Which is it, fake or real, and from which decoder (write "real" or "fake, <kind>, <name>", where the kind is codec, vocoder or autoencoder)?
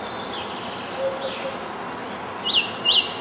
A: real